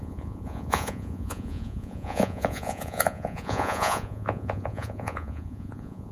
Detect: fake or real fake